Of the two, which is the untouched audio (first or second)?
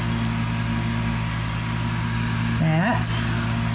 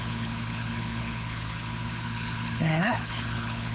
first